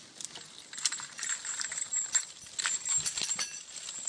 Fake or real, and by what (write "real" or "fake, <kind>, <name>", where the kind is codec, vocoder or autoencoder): real